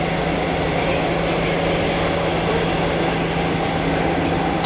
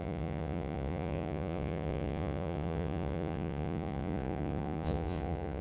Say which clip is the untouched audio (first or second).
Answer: first